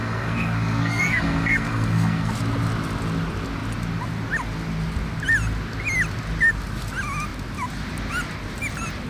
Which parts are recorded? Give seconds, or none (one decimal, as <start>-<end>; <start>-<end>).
2.3-9.1